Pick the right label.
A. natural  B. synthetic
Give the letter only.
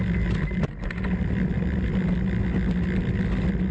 A